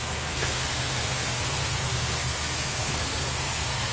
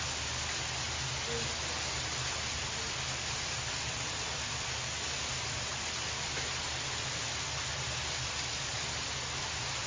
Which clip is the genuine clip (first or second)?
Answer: second